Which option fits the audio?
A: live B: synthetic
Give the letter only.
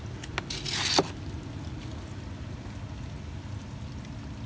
A